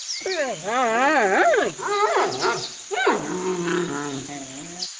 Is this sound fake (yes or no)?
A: no